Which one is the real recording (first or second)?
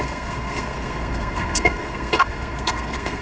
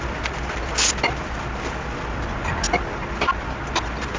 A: second